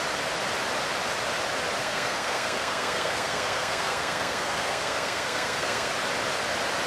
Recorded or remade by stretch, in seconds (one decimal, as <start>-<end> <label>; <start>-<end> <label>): 0.0-1.8 recorded; 1.8-5.9 remade; 5.9-6.9 recorded